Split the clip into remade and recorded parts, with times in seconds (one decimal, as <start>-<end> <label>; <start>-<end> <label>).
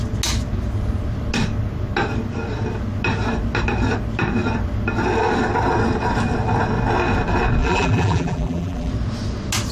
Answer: 0.0-7.6 recorded; 7.6-8.9 remade; 8.9-9.7 recorded